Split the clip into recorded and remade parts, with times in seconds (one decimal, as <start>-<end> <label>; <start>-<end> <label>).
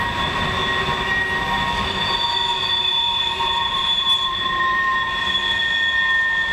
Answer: 0.0-2.5 recorded; 2.5-5.1 remade; 5.1-6.5 recorded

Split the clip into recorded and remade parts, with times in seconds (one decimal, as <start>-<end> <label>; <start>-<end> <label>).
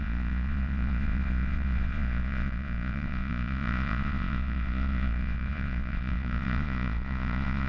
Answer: 0.0-7.7 remade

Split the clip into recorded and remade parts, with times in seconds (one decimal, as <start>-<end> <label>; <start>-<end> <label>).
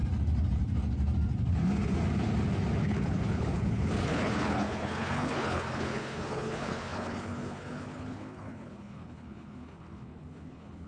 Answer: 0.0-2.8 recorded; 2.8-10.9 remade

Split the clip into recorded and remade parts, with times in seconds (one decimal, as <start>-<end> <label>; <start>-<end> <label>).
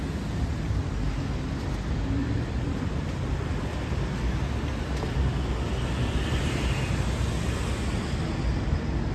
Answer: 0.0-2.2 recorded; 2.2-3.9 remade; 3.9-9.1 recorded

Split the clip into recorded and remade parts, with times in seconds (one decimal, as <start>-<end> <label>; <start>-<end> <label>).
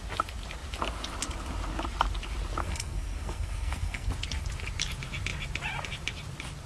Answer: 0.0-2.6 recorded; 2.6-4.1 remade; 4.1-6.7 recorded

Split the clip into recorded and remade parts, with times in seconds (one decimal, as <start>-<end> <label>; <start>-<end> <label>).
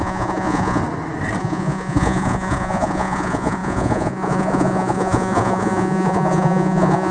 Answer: 0.0-0.8 remade; 0.8-1.4 recorded; 1.4-7.1 remade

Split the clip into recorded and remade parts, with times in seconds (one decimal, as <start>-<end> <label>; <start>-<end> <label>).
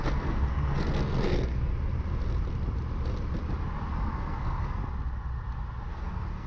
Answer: 0.0-1.7 remade; 1.7-3.9 recorded; 3.9-4.8 remade; 4.8-5.9 recorded; 5.9-6.5 remade